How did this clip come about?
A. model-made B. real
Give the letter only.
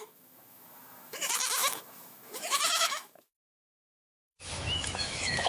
A